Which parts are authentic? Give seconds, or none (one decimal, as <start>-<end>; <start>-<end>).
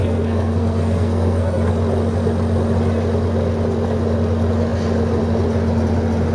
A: 1.7-6.3